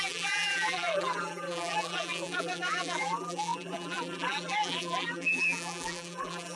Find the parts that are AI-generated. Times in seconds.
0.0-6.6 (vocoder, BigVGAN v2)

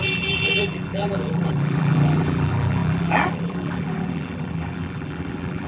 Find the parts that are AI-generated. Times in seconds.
0.0-5.7 (vocoder, BigVGAN v2)

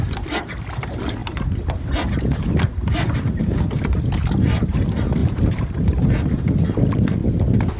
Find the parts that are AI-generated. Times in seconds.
5.2-6.6 (vocoder, BigVGAN v2)

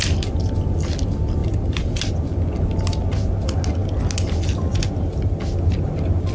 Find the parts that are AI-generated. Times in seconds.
1.4-2.1 (vocoder, BigVGAN v2)